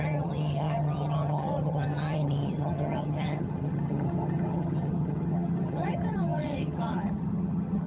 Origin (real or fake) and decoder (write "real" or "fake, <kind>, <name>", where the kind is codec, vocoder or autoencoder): fake, vocoder, HiFi-GAN